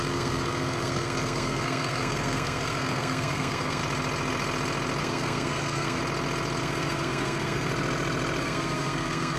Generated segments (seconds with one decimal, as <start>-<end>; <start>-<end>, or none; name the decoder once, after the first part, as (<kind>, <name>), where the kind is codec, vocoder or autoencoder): 0.0-3.8 (codec, SNAC); 5.0-6.0; 6.6-7.7; 8.4-9.4